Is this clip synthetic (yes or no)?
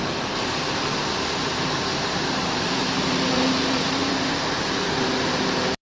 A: yes